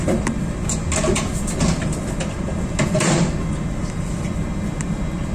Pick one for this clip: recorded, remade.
recorded